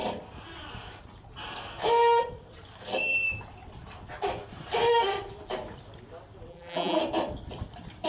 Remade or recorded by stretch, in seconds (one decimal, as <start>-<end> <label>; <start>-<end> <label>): 0.0-6.5 recorded; 6.5-7.0 remade; 7.0-8.1 recorded